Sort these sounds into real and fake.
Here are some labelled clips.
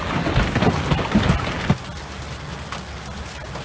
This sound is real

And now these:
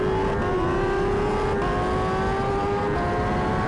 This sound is real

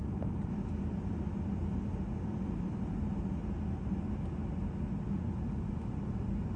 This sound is real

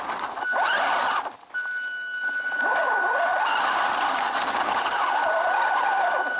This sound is real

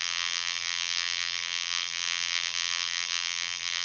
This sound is fake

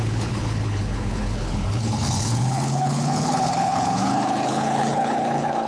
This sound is fake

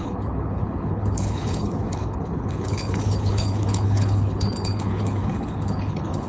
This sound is fake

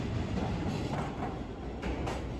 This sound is real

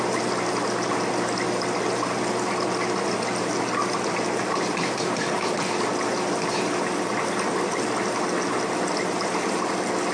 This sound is real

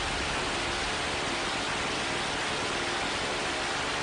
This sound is real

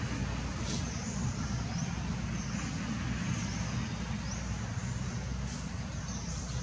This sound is real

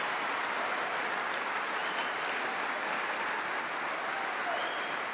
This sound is real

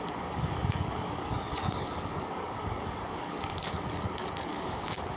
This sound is fake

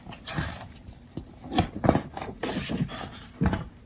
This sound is fake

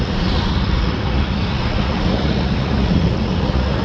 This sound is fake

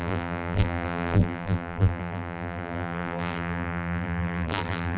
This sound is fake